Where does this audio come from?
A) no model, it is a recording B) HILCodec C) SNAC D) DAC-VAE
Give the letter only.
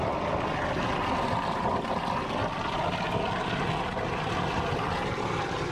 A